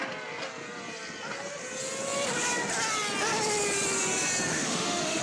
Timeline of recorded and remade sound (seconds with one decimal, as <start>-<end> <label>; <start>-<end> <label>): 0.0-4.5 recorded; 4.5-5.2 remade